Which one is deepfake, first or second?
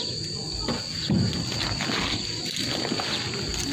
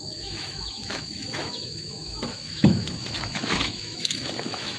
second